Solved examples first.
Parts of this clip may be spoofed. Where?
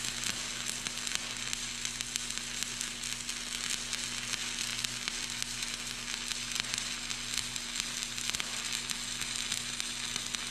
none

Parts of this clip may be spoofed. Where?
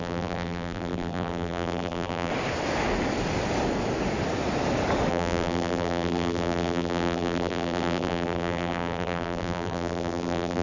0.0-2.3 (vocoder, BigVGAN v2); 5.1-10.6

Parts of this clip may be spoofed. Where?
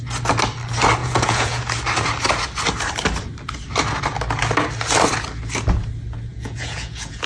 1.0-1.6 (vocoder, Vocos); 6.3-7.3